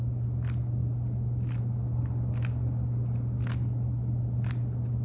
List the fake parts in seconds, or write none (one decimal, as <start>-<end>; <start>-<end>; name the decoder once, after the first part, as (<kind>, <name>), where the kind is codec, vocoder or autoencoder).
none